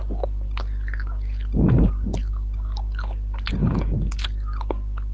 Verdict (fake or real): real